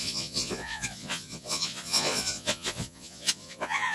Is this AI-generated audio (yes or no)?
yes